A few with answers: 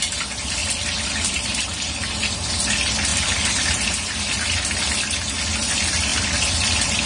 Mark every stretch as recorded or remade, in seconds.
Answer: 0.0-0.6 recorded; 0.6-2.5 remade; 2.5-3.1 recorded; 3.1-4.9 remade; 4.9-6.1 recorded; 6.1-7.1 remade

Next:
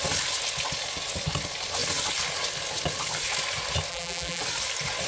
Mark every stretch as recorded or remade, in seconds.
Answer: 0.0-3.9 recorded; 3.9-4.4 remade; 4.4-5.1 recorded